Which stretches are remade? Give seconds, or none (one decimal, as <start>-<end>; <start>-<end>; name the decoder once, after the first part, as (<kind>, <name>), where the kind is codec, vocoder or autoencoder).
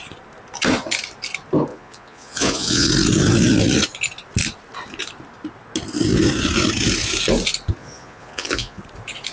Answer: 1.7-2.9 (vocoder, Vocos); 7.8-8.8